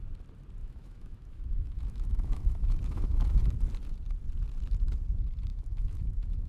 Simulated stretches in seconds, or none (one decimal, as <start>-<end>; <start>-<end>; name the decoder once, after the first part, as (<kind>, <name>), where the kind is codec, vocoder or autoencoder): 0.6-3.4 (autoencoder, DAC-VAE); 5.5-6.5